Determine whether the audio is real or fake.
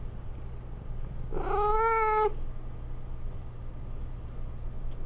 real